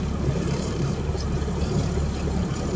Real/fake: fake